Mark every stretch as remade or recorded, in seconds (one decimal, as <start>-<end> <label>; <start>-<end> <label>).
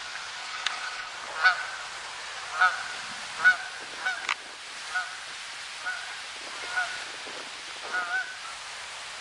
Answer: 0.0-0.4 recorded; 0.4-1.1 remade; 1.1-9.2 recorded